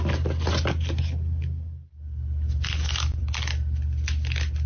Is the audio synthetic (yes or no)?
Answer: no